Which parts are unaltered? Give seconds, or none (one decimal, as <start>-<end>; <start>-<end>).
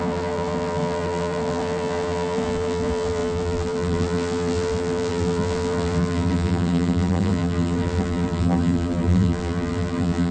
none